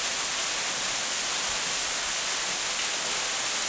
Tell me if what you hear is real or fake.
real